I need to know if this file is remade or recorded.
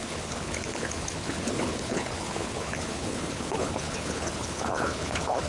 remade